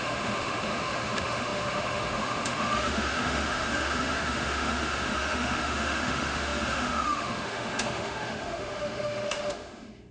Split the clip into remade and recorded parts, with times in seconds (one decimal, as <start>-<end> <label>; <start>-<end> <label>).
0.0-10.1 remade

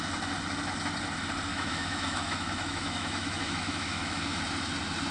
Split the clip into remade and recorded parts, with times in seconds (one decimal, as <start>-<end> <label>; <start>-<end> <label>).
0.0-1.5 recorded; 1.5-4.4 remade; 4.4-5.1 recorded

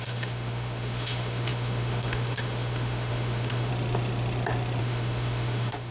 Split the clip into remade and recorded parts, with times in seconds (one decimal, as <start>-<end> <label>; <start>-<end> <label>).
0.0-3.7 remade; 3.7-4.8 recorded; 4.8-5.9 remade

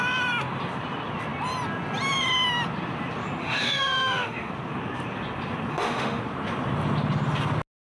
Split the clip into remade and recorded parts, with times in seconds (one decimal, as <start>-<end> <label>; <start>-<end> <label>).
0.0-3.4 recorded; 3.4-4.5 remade; 4.5-5.7 recorded; 5.7-6.2 remade; 6.2-7.8 recorded

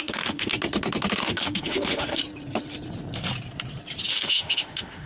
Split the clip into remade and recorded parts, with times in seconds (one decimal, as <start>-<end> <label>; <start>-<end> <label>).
0.0-0.5 remade; 0.5-1.2 recorded; 1.2-2.2 remade; 2.2-4.1 recorded; 4.1-5.1 remade